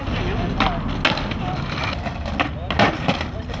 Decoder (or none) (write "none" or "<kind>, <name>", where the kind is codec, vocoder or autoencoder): none